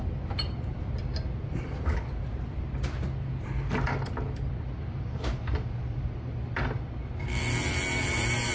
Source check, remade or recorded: recorded